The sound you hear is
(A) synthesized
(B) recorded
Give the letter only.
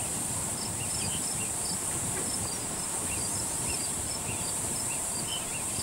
A